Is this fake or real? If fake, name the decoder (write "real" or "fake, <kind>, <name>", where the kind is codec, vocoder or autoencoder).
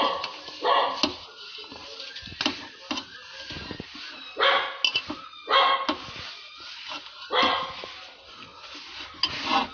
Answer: real